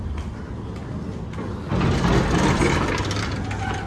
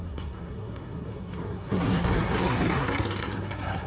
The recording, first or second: first